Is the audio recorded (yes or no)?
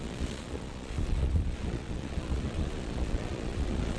no